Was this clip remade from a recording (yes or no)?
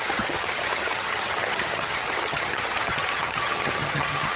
yes